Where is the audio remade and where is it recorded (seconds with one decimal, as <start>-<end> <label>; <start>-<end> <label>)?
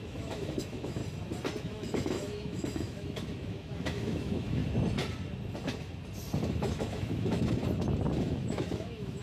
0.0-1.0 remade; 1.0-1.6 recorded; 1.6-4.6 remade; 4.6-6.5 recorded; 6.5-7.6 remade; 7.6-8.2 recorded; 8.2-9.2 remade